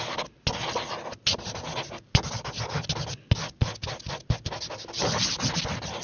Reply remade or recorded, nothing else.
recorded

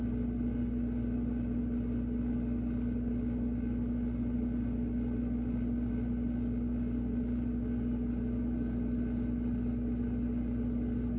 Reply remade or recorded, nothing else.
recorded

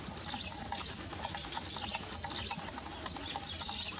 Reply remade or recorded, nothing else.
recorded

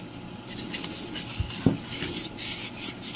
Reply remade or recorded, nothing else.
recorded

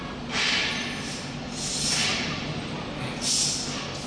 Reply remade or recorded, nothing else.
recorded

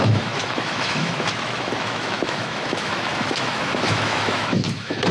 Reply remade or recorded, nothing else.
remade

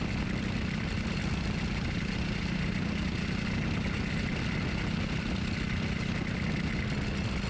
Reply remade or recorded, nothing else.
recorded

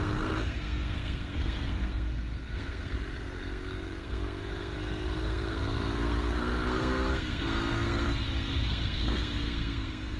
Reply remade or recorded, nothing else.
remade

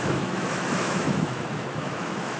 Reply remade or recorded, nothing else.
remade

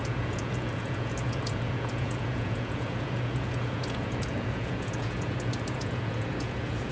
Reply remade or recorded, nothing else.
remade